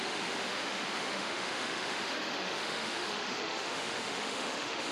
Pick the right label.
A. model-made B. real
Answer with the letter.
A